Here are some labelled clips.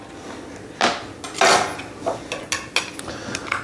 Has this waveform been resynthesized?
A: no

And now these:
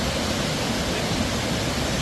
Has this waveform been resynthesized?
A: no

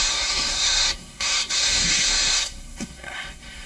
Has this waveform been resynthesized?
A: yes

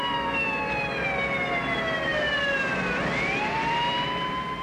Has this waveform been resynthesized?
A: no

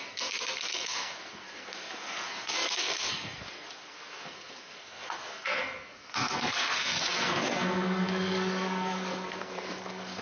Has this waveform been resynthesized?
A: yes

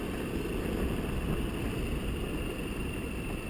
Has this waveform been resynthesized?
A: no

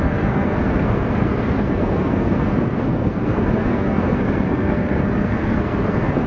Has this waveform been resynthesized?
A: yes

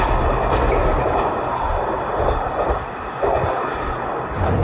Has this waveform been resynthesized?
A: no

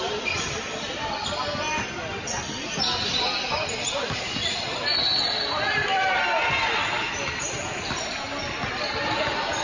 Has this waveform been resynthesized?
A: no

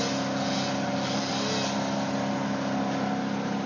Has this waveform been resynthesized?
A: no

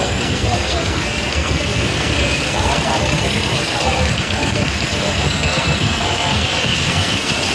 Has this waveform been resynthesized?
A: yes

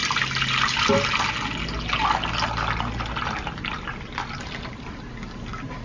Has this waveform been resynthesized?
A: no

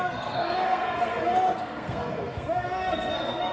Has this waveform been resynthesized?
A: yes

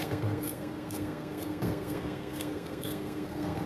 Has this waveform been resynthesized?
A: yes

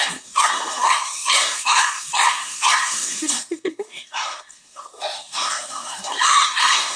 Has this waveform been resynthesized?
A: yes